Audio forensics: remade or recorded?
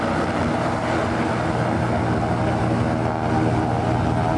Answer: recorded